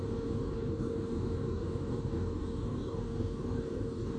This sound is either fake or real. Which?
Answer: fake